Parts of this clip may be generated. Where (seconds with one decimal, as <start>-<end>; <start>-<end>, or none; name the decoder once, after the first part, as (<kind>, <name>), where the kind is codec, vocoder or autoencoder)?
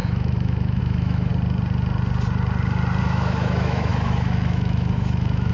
0.0-1.3 (autoencoder, DAC-VAE); 3.0-5.5